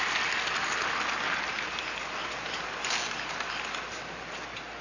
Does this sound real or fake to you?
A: real